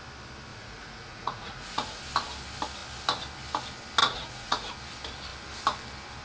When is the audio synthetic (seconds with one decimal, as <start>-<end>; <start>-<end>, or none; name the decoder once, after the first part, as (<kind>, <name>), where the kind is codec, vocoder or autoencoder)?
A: 0.5-2.0 (vocoder, Vocos); 4.0-4.7